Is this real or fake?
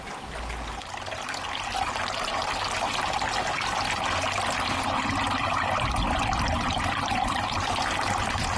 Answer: real